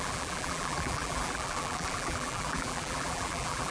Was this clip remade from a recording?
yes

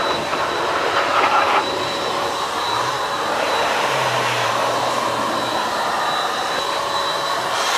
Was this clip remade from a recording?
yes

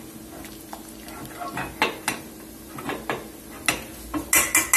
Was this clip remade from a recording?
no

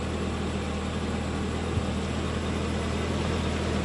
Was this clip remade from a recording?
no